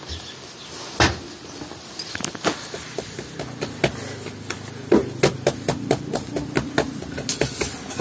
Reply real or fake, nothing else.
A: real